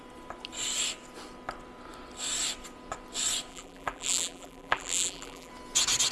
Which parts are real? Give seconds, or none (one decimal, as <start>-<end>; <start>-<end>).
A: 0.0-3.5; 5.5-6.1